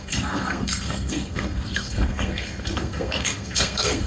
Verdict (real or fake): fake